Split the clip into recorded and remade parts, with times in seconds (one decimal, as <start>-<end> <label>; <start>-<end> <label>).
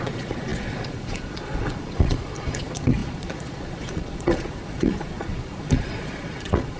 0.0-6.8 remade